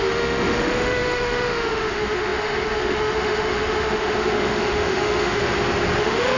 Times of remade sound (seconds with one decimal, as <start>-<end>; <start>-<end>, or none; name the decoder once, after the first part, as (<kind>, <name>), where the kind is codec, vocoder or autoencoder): 0.0-5.4 (autoencoder, DAC-VAE); 6.0-6.4